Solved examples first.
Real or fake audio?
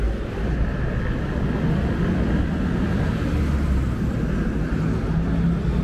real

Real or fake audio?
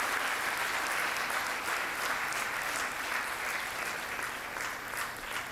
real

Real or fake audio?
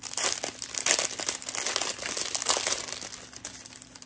real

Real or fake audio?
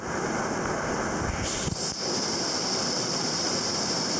fake